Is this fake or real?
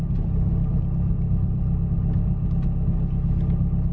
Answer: real